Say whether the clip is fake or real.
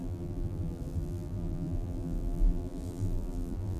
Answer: fake